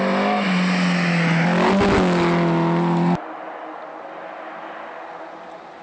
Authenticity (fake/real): real